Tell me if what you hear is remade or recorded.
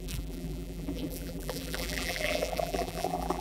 remade